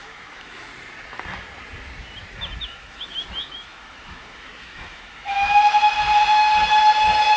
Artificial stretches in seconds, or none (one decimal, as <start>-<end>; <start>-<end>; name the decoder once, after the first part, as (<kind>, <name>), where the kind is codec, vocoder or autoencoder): 0.0-0.7 (autoencoder, DAC-VAE); 2.6-7.4